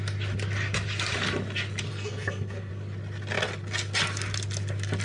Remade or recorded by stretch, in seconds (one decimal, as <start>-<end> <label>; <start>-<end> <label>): 0.0-1.9 recorded; 1.9-2.7 remade; 2.7-5.0 recorded